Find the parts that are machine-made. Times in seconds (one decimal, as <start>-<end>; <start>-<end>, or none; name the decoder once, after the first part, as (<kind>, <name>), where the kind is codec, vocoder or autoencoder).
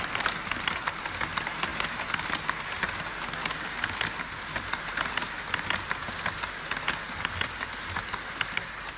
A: none